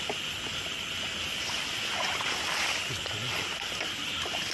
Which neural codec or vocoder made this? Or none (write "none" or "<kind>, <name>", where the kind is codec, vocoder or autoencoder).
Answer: none